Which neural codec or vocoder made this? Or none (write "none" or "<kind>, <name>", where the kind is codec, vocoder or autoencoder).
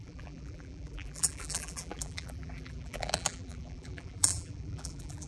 vocoder, BigVGAN v2